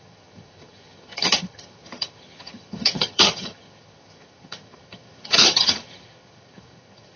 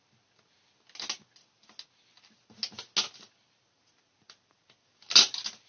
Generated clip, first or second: first